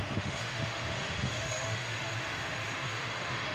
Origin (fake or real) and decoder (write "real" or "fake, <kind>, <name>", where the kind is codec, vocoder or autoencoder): fake, autoencoder, DAC-VAE